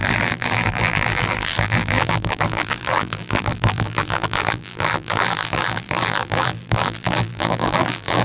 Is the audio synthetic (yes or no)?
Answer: yes